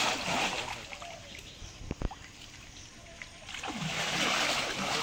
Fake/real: real